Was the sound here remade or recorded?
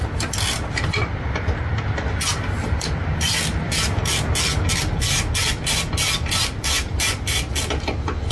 recorded